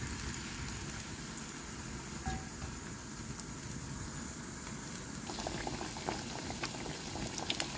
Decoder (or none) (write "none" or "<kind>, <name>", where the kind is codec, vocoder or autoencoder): none